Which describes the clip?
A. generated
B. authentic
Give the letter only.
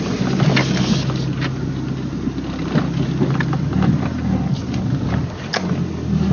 B